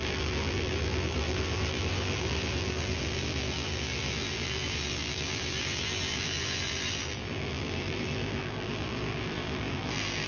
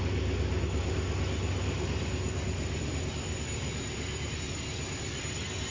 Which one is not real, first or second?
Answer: first